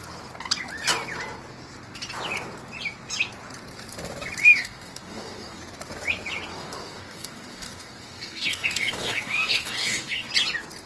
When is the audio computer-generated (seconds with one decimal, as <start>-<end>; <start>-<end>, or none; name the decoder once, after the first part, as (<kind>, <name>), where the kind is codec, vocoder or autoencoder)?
4.4-5.6 (codec, DAC); 6.5-10.3